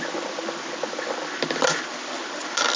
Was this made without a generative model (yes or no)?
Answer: yes